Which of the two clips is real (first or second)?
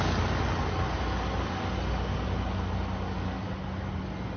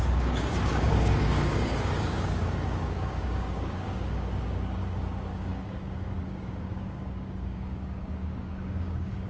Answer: first